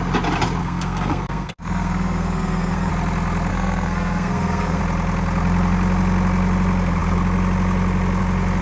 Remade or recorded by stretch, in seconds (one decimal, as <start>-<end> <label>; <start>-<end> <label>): 0.0-0.6 recorded; 0.6-2.9 remade; 2.9-3.5 recorded; 3.5-4.8 remade; 4.8-8.6 recorded